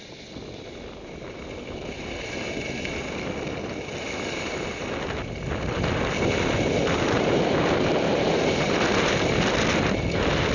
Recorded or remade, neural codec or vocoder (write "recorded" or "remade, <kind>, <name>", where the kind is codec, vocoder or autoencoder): recorded